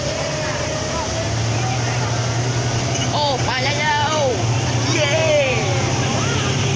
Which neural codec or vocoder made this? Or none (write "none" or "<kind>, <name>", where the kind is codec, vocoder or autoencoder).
vocoder, BigVGAN v2